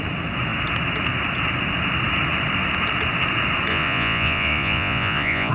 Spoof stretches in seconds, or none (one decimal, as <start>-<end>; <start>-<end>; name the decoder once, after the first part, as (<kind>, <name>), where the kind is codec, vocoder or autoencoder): 3.7-5.5 (vocoder, Vocos)